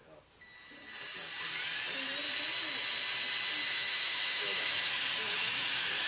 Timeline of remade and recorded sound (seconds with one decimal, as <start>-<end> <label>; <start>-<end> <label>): 0.0-3.6 recorded; 3.6-6.1 remade